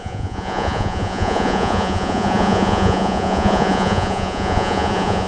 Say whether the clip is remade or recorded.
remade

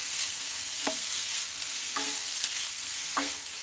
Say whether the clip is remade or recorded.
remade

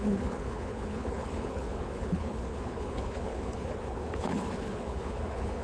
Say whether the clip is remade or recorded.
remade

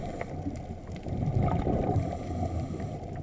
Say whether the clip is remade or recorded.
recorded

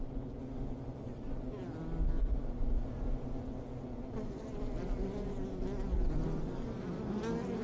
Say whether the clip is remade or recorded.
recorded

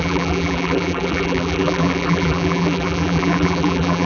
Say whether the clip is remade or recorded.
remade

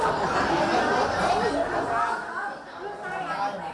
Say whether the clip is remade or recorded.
recorded